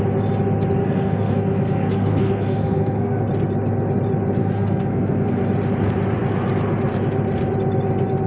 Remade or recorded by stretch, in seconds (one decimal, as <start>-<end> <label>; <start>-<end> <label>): 0.0-0.8 recorded; 0.8-3.2 remade; 3.2-4.4 recorded; 4.4-5.4 remade; 5.4-8.3 recorded